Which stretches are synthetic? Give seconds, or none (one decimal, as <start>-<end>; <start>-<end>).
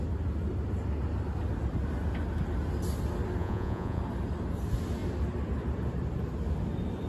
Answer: 3.4-4.0